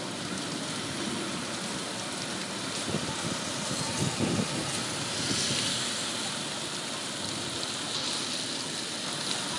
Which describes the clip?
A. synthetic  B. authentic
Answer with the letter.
B